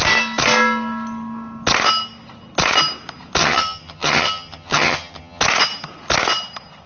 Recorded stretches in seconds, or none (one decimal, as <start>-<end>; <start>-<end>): 0.0-3.4; 5.4-6.9

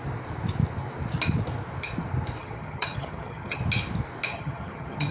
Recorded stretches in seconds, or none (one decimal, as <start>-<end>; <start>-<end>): 0.0-2.4; 3.6-4.3

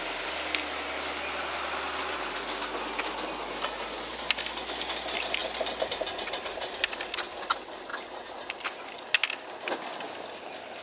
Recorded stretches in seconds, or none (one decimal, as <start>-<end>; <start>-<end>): 0.0-10.8

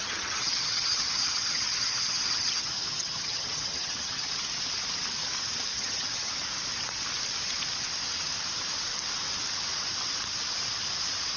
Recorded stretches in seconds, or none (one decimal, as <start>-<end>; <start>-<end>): 4.3-5.7; 6.3-11.4

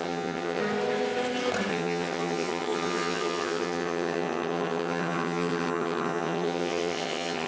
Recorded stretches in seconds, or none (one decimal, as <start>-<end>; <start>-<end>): 0.6-1.7